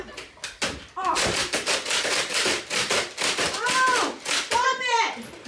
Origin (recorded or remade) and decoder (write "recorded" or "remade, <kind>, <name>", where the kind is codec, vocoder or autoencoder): remade, vocoder, BigVGAN v2